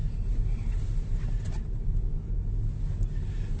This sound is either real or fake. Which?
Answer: real